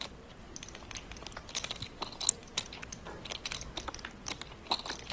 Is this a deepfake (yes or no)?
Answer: no